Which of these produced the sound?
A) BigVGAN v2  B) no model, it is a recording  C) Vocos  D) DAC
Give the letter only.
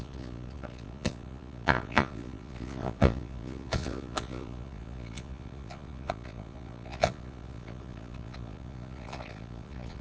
C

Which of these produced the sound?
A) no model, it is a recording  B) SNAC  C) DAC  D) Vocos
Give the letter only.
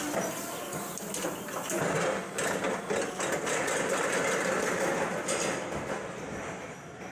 A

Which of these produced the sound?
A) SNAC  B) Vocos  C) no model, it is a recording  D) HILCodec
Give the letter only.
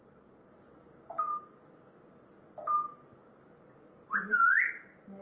C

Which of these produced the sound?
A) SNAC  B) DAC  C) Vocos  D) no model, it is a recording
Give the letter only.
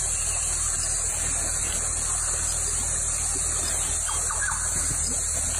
D